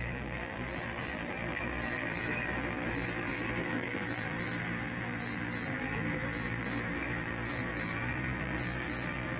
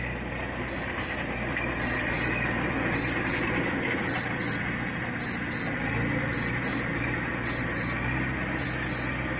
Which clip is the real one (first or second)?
second